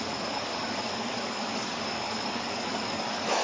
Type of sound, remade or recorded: remade